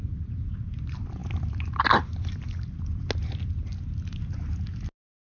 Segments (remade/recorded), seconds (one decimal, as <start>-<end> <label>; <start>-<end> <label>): 0.0-5.4 recorded